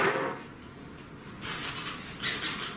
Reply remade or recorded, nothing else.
recorded